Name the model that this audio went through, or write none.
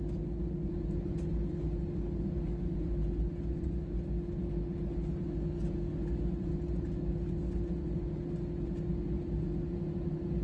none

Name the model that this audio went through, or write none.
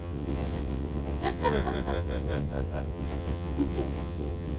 vocoder, WaveNeXt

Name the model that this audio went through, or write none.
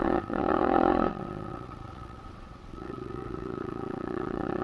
vocoder, WaveNeXt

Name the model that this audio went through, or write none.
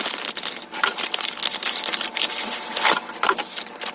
none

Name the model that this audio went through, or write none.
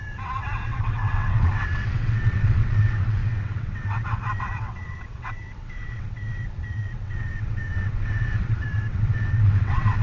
vocoder, WaveNeXt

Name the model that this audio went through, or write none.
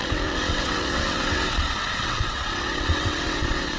vocoder, WaveNeXt